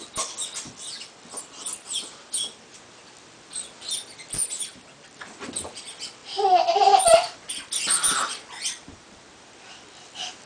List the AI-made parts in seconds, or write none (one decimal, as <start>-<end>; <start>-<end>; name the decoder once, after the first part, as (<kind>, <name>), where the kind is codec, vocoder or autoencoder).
none